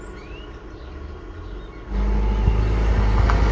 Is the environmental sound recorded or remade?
recorded